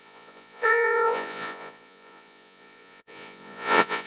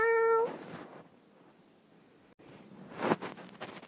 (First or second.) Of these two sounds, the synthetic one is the first